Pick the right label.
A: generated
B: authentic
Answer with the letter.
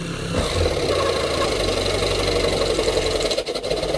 B